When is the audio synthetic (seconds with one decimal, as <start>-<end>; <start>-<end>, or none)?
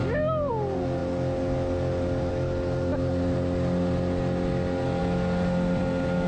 none